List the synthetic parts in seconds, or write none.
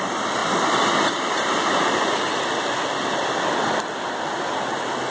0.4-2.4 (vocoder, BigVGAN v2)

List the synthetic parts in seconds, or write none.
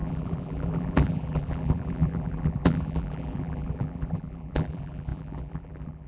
0.0-6.1 (vocoder, BigVGAN v2)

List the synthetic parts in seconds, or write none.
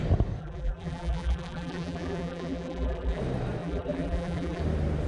0.4-3.2 (vocoder, BigVGAN v2); 3.6-4.6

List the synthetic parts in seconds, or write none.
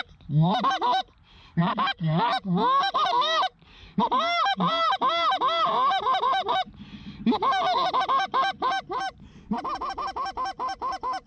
3.0-4.9 (vocoder, BigVGAN v2)